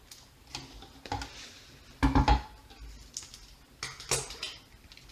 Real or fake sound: real